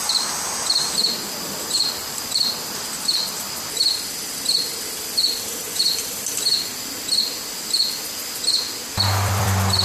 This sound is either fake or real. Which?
fake